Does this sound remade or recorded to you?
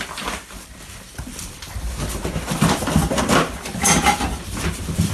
recorded